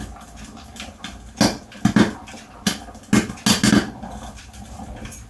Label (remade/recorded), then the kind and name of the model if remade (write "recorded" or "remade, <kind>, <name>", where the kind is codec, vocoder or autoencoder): recorded